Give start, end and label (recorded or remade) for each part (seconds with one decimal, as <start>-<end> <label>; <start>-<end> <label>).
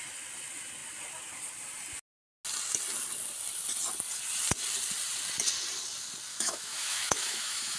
0.0-6.3 recorded; 6.3-7.8 remade